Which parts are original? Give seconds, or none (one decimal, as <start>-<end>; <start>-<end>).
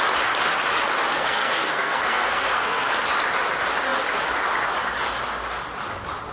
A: 0.0-1.1; 2.9-6.3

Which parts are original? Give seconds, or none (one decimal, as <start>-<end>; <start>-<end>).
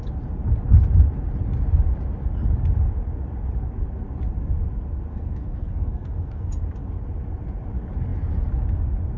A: 0.0-5.1; 6.6-9.2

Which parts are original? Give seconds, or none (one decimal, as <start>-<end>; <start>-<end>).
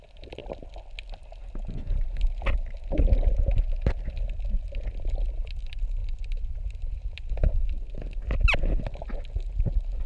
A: 0.0-10.1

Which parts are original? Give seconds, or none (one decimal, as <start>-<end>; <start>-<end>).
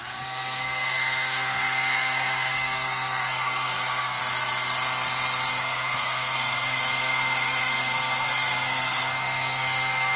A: 4.2-5.5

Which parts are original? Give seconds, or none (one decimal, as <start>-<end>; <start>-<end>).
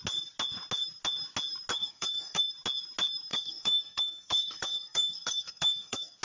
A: 0.0-1.7; 2.4-3.3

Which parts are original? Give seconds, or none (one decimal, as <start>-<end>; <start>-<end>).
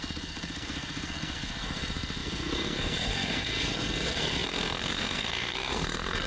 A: none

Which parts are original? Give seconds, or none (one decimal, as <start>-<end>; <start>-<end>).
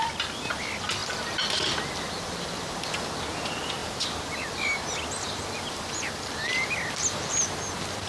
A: 0.0-8.1